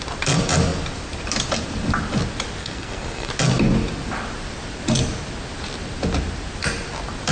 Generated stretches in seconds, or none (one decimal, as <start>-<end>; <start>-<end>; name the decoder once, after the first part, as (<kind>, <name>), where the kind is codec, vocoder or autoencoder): 2.6-3.3 (codec, SNAC)